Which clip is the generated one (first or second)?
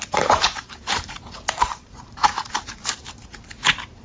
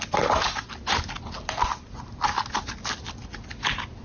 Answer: first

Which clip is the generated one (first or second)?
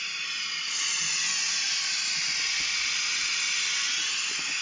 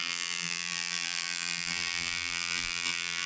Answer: second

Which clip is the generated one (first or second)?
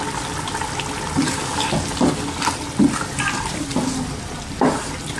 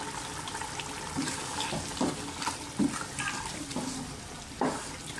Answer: second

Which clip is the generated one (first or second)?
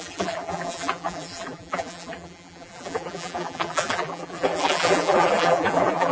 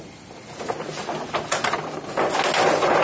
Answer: first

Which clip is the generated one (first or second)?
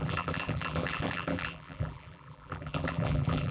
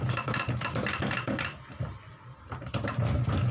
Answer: first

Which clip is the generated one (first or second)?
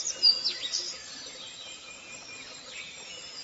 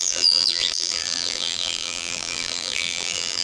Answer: second